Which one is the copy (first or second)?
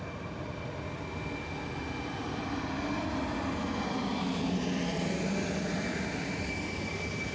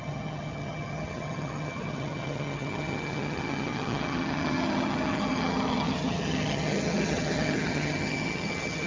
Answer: second